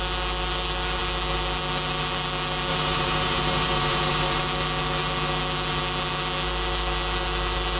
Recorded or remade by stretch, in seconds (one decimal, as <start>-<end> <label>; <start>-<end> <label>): 0.0-2.7 recorded; 2.7-4.4 remade; 4.4-7.8 recorded